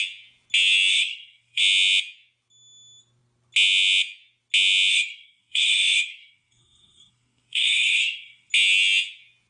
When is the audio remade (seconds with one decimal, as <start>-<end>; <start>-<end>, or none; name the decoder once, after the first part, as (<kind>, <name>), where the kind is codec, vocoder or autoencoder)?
0.9-1.6 (codec, SNAC); 4.9-8.5